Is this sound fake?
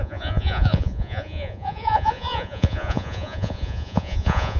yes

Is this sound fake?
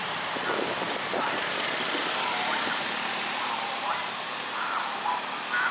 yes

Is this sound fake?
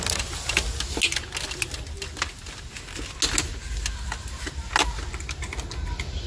no